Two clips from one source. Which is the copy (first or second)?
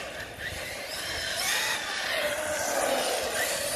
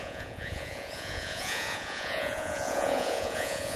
second